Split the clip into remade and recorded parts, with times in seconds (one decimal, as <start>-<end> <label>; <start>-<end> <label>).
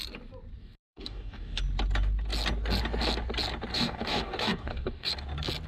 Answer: 0.0-0.6 recorded; 0.6-1.6 remade; 1.6-3.7 recorded; 3.7-5.1 remade; 5.1-5.7 recorded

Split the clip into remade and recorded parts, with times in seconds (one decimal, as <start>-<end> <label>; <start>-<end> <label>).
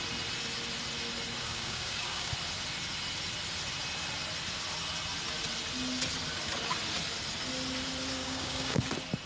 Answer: 0.0-1.4 recorded; 1.4-2.3 remade; 2.3-8.2 recorded; 8.2-8.8 remade; 8.8-9.3 recorded